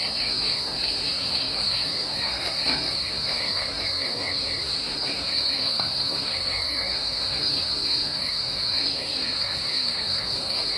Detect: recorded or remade remade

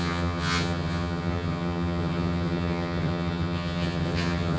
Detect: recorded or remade remade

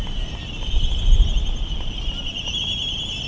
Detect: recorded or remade recorded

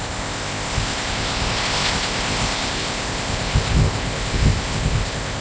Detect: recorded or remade remade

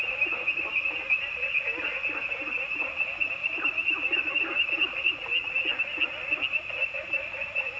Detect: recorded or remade recorded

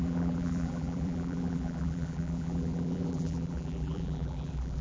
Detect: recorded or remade remade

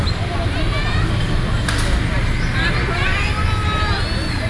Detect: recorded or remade recorded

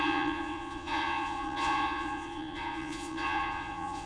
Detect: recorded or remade remade